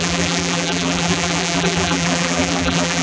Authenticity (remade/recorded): remade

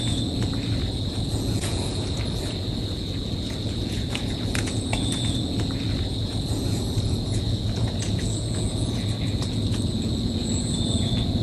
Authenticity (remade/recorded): remade